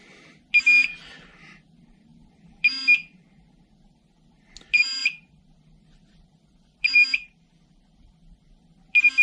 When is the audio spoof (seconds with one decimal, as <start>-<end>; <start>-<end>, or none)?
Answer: none

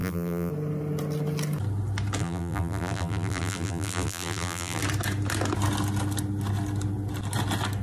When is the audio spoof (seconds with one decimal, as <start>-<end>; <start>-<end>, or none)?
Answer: 0.0-0.5; 2.2-4.8

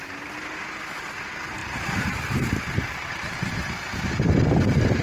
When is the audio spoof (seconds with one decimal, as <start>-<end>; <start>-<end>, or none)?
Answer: 1.6-4.4

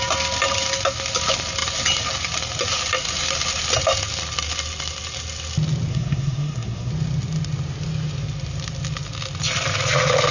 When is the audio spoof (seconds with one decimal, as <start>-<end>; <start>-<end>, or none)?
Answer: 5.9-6.9

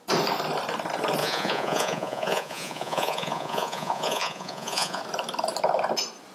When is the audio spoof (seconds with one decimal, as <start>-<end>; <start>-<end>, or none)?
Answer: 1.2-5.0

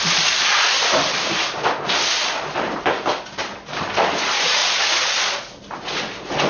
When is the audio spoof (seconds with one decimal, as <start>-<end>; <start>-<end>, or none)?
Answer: none

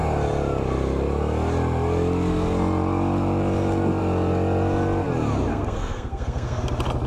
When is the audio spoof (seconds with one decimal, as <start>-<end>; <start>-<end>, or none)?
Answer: 5.5-6.6